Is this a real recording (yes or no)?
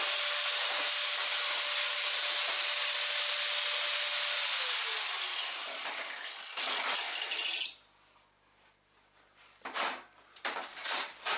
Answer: yes